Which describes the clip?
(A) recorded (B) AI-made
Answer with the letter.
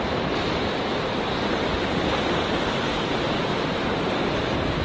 B